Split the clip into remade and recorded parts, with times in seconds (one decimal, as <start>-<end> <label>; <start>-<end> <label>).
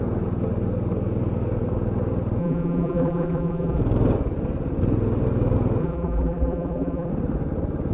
0.0-2.4 recorded; 2.4-3.8 remade; 3.8-5.8 recorded; 5.8-7.1 remade; 7.1-7.9 recorded